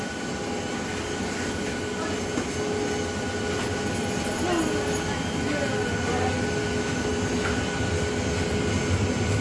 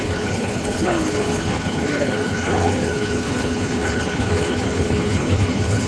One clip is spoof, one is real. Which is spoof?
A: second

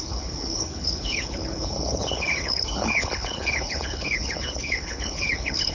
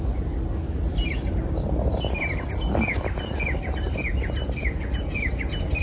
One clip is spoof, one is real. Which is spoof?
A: first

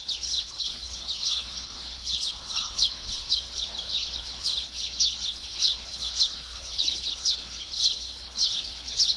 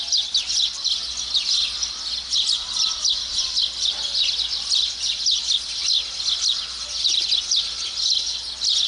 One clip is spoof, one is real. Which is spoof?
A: first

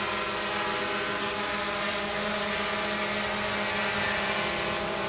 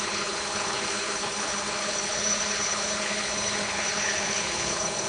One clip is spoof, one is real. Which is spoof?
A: second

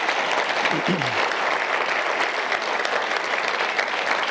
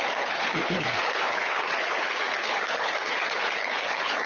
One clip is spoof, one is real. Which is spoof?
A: second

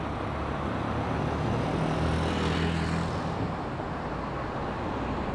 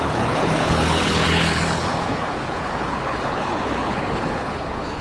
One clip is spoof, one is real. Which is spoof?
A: second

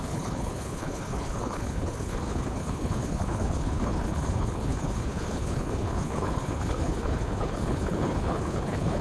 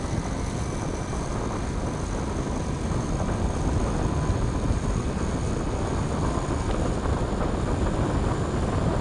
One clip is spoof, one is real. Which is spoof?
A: first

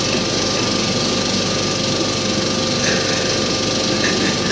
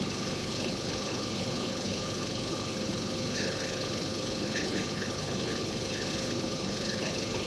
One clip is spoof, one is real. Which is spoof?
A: second